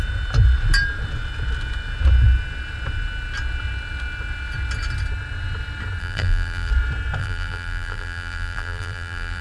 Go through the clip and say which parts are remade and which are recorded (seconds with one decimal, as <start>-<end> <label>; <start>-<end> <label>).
0.0-6.0 recorded; 6.0-6.7 remade; 6.7-7.2 recorded; 7.2-9.4 remade